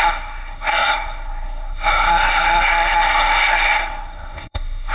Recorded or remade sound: remade